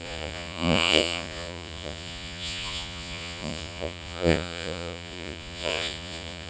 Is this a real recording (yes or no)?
no